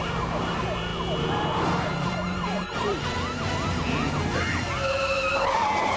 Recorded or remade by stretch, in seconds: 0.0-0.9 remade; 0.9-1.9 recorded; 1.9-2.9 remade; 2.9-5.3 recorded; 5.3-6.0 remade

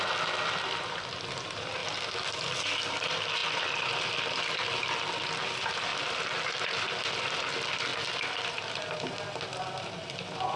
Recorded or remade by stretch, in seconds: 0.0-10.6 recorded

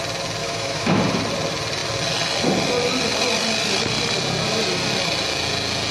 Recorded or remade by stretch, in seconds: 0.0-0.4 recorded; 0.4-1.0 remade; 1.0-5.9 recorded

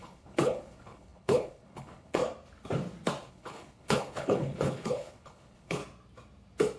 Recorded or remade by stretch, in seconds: 0.0-2.2 remade; 2.2-3.3 recorded; 3.3-5.8 remade; 5.8-6.8 recorded